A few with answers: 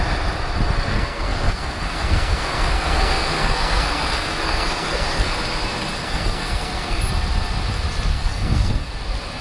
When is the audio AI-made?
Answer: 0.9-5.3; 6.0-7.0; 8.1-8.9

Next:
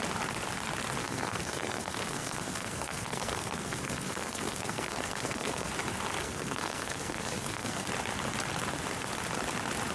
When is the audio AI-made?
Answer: 1.0-5.7; 6.2-7.9

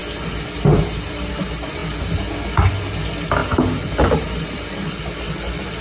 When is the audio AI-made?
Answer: none

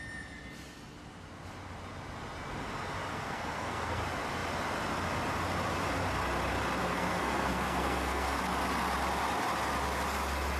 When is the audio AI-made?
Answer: 3.1-4.0; 6.8-8.4